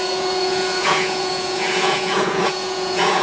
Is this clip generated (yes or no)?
yes